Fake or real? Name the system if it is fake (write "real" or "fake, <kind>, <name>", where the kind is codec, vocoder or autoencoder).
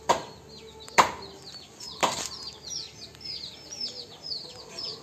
real